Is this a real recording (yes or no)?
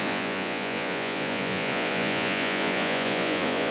no